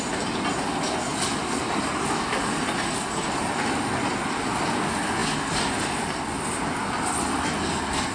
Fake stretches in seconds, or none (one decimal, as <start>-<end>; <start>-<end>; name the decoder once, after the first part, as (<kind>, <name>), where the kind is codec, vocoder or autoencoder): none